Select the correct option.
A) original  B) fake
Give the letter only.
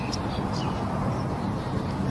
A